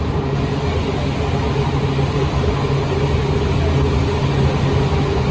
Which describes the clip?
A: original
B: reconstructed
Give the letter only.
A